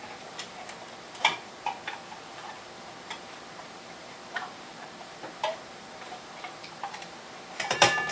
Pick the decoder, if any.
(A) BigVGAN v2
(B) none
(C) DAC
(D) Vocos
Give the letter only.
A